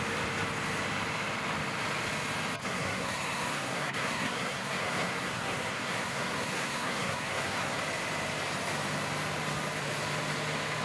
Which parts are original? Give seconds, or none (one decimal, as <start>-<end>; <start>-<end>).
0.0-2.6; 7.8-10.8